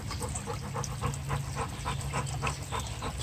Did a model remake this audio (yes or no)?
no